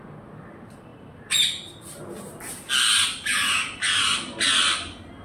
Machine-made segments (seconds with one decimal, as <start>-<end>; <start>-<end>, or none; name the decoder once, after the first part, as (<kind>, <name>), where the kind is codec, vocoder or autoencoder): none